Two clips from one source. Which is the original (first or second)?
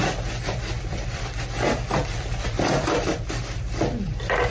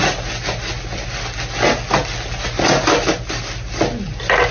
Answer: second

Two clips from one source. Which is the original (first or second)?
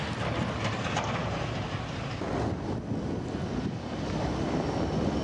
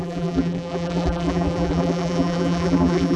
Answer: first